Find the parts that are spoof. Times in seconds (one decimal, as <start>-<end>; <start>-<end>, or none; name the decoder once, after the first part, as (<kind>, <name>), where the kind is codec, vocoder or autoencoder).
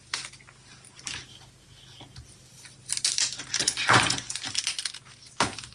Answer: 3.6-4.5 (vocoder, Vocos)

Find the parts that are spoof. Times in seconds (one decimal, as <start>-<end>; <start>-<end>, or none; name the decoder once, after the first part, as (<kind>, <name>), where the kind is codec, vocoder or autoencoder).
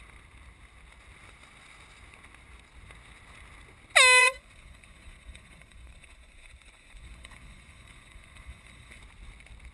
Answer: 4.2-9.0 (vocoder, Vocos)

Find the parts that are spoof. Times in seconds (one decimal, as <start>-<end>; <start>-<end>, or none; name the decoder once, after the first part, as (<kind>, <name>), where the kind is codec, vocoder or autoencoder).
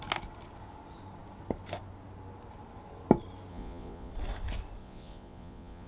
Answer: 3.5-4.1 (vocoder, Vocos); 4.8-5.9